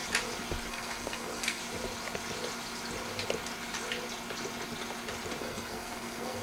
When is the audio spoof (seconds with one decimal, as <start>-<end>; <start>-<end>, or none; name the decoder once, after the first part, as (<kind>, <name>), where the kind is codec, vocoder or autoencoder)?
0.7-1.6 (codec, SNAC); 5.4-6.4